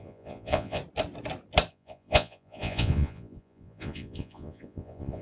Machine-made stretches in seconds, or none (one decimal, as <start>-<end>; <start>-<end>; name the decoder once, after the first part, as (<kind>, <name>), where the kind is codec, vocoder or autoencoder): 0.0-0.8 (vocoder, Vocos); 1.7-5.2

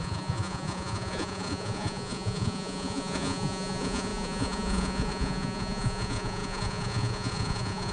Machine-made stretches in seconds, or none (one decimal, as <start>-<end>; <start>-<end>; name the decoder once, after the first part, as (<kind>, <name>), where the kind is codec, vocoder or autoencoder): 0.0-7.9 (vocoder, Vocos)

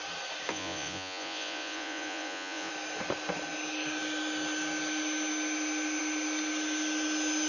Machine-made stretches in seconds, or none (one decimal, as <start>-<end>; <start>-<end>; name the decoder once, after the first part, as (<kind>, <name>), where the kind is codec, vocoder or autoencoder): 0.5-2.7 (vocoder, Vocos)

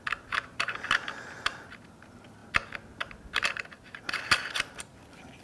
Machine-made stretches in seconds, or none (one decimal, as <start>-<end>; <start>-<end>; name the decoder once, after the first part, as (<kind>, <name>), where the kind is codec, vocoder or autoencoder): none

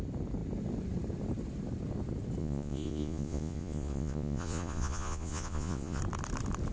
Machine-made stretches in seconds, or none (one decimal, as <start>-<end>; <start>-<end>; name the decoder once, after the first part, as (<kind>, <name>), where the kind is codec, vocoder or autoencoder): 2.4-6.0 (vocoder, Vocos)

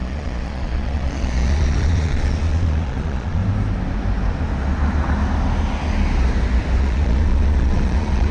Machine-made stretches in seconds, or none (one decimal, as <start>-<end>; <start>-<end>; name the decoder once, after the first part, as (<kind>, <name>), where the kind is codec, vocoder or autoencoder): 0.0-3.4 (vocoder, Vocos); 6.8-8.3